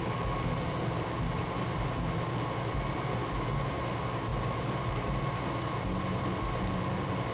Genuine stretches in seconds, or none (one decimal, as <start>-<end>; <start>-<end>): 0.0-7.3